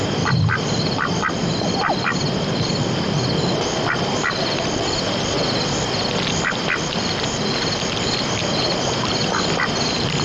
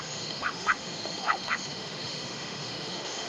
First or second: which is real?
first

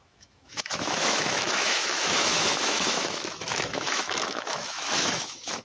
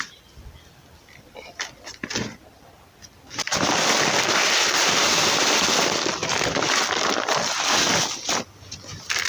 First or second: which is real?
second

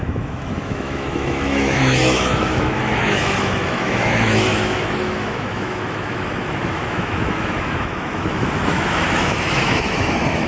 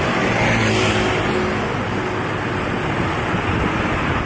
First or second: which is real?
second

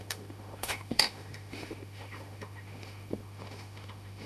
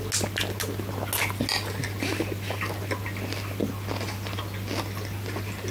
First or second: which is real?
second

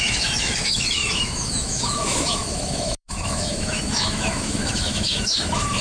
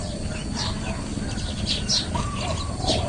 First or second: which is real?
second